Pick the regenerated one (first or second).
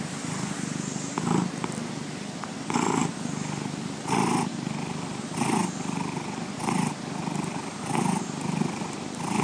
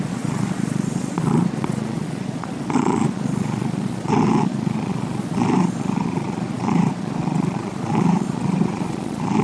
second